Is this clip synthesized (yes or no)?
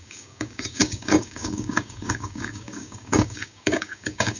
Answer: yes